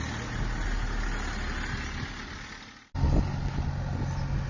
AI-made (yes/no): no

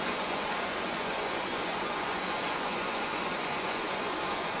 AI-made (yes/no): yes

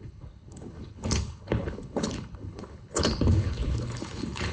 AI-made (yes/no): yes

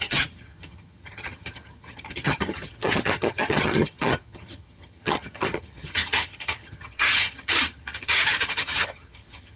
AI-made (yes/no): yes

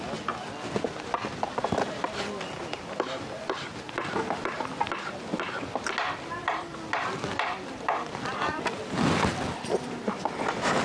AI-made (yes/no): no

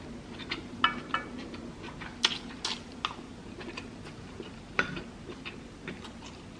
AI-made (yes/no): no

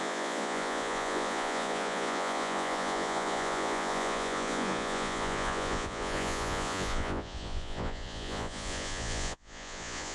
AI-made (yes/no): yes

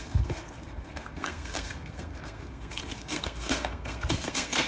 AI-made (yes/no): yes